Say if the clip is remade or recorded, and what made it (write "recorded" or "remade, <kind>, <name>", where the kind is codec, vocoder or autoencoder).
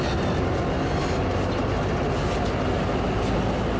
recorded